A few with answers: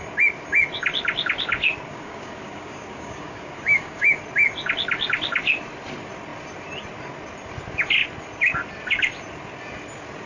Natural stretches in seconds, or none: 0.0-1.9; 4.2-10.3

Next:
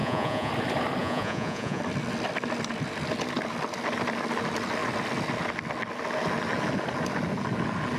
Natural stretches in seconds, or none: 0.5-1.0; 1.8-8.0

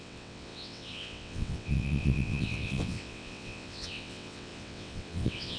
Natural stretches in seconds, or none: none

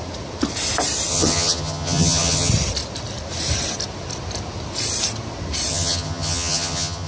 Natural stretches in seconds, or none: 0.0-1.1; 2.5-5.7

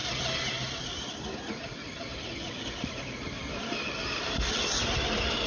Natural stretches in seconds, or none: 0.0-0.7

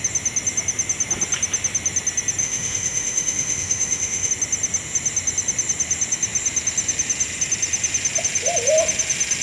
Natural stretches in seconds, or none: 0.0-2.4; 4.3-9.4

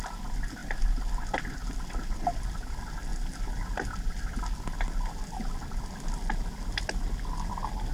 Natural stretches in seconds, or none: 0.0-7.9